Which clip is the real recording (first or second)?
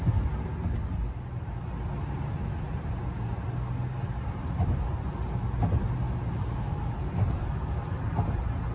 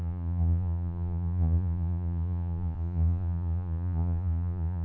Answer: first